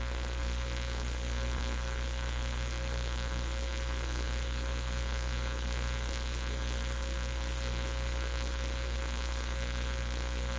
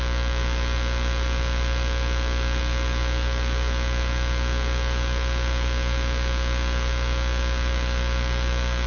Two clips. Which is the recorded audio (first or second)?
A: second